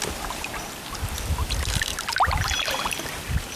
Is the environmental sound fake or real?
real